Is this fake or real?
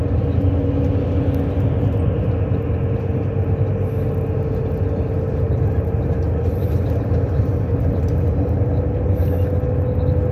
real